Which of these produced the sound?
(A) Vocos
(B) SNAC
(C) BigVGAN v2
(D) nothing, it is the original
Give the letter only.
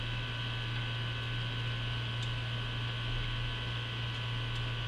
D